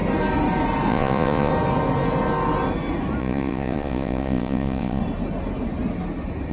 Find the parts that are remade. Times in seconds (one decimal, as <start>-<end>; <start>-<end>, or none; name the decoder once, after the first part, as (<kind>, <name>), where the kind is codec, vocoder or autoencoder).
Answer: 0.9-1.5 (vocoder, Vocos); 3.2-5.0